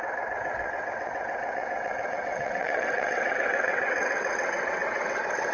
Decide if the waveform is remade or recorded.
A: remade